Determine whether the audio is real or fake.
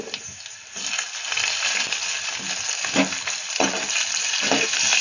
real